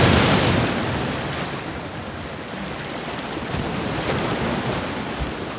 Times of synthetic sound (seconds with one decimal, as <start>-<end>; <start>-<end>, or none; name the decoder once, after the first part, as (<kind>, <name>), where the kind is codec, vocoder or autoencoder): 0.8-4.2 (vocoder, BigVGAN v2)